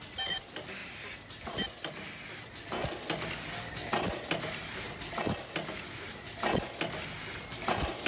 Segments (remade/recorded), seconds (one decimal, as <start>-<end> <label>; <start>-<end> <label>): 0.0-8.1 recorded